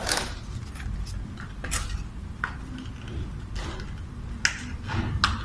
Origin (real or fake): real